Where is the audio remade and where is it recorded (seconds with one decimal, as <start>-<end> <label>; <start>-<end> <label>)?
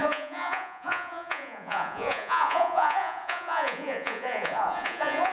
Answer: 0.0-5.3 remade